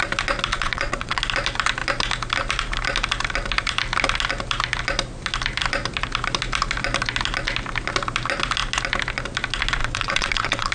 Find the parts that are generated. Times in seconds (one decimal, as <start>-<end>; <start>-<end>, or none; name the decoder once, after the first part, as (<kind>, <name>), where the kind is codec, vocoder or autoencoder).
0.5-1.2 (vocoder, WaveNeXt); 9.8-10.7